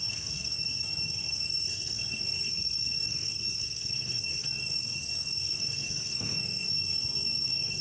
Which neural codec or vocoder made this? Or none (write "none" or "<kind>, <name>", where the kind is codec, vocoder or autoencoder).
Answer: codec, SNAC